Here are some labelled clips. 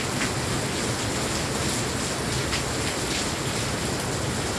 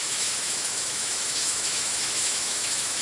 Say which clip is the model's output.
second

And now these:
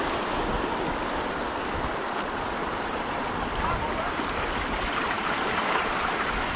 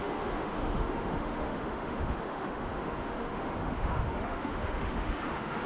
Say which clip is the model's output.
second